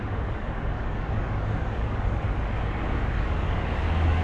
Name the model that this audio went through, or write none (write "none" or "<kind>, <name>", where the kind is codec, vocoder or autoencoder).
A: codec, DAC